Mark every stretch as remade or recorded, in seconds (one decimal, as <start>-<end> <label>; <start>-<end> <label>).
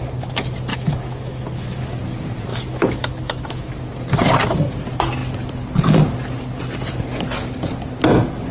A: 0.0-0.7 recorded; 0.7-1.8 remade; 1.8-2.5 recorded; 2.5-3.7 remade; 3.7-8.5 recorded